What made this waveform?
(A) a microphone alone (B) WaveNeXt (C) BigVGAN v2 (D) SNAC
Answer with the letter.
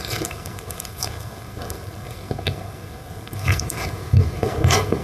D